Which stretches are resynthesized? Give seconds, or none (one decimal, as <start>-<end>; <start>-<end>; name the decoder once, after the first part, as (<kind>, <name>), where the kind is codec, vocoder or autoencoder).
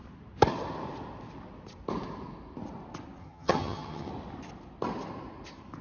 3.2-4.1 (vocoder, HiFi-GAN)